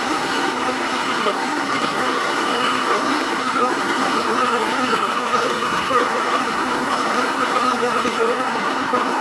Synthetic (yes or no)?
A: yes